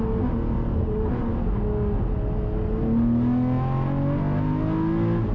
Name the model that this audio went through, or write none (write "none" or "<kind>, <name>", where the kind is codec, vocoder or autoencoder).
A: none